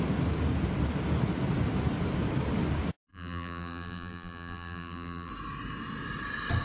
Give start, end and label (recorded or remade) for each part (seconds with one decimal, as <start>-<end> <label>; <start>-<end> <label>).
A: 0.0-3.1 recorded; 3.1-5.3 remade; 5.3-6.6 recorded